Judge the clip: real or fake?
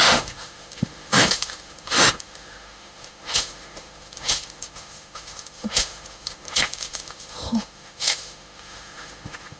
fake